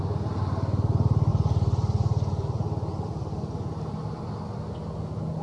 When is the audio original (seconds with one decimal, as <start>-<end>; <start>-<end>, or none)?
0.0-5.4